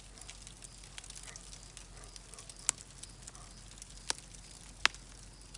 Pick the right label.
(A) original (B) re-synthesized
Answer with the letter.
A